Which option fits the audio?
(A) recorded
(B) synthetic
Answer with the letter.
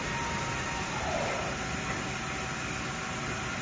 A